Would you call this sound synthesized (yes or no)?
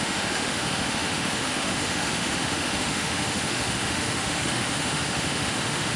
yes